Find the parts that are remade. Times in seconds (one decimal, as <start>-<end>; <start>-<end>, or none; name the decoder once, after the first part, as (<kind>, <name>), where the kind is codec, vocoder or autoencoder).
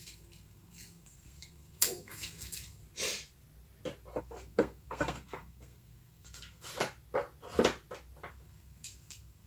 0.0-2.8 (codec, SNAC); 4.2-6.7; 8.3-9.5